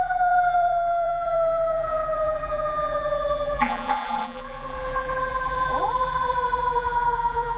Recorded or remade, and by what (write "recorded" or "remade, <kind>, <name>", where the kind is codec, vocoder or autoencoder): remade, vocoder, BigVGAN v2